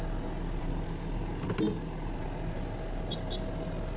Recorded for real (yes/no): yes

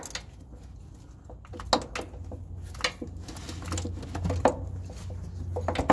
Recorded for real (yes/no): yes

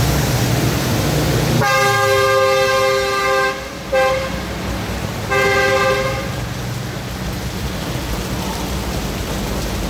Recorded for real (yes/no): yes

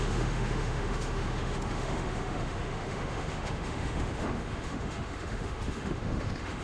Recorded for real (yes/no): no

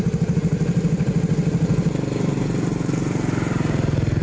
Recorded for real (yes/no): yes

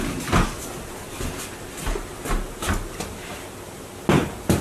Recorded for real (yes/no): yes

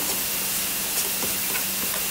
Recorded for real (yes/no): yes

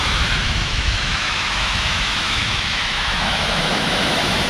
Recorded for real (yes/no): no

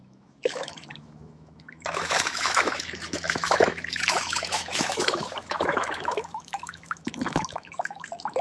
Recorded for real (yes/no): no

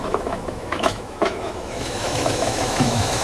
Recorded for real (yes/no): no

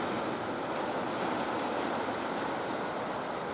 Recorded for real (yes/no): yes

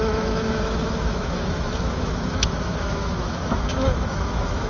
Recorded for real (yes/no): no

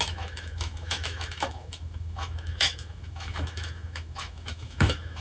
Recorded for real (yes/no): no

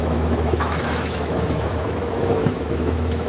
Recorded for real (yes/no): no